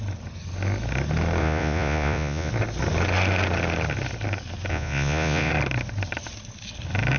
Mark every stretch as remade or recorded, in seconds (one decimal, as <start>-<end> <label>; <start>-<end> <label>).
0.0-1.4 recorded; 1.4-2.5 remade; 2.5-4.7 recorded; 4.7-5.5 remade; 5.5-7.2 recorded